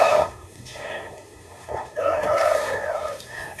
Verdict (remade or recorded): remade